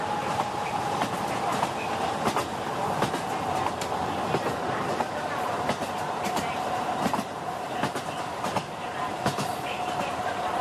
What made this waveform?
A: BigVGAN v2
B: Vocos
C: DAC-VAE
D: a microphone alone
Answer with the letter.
D